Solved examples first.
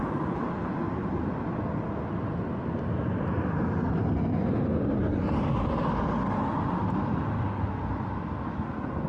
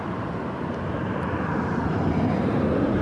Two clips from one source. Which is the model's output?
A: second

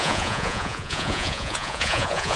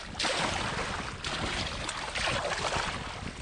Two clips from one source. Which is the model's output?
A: first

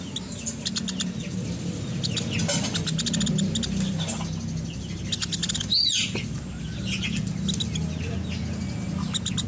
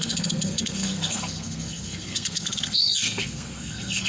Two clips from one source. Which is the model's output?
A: second